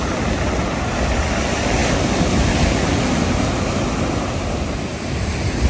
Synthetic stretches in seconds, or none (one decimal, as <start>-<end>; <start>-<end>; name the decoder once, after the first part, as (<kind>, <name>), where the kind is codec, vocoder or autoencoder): 4.9-5.7 (vocoder, BigVGAN v2)